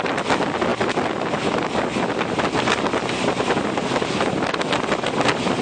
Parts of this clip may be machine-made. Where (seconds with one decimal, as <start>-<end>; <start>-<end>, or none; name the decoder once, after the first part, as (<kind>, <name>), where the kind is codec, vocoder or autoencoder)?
none